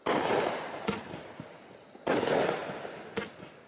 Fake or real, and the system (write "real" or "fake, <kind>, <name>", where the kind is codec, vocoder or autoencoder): real